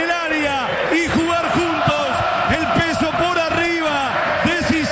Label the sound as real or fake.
real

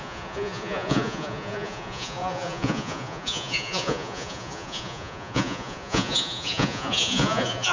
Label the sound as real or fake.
fake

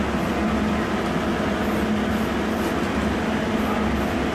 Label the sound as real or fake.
real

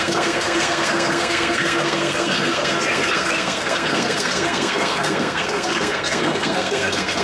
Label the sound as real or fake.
fake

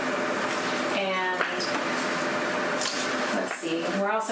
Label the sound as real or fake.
real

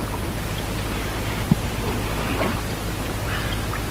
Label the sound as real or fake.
real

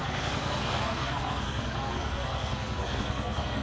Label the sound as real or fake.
fake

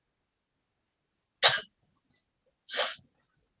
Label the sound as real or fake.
real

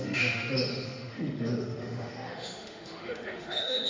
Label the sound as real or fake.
fake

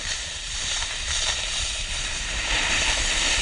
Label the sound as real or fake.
fake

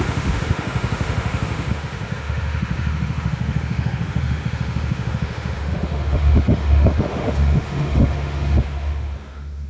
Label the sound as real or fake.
fake